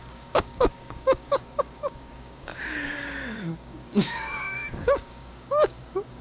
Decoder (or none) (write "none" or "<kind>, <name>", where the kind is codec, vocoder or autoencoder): codec, DAC